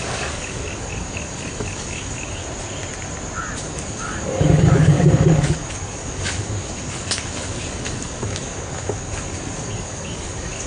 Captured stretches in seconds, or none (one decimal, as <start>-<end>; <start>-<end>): 2.4-3.6